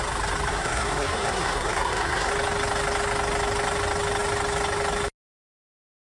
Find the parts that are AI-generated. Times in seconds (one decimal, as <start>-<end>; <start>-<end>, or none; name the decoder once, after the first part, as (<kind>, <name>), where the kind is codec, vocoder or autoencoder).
0.5-2.3 (codec, SNAC)